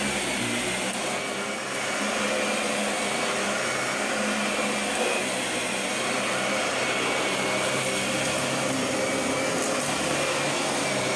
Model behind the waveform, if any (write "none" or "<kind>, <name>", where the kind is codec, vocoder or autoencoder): none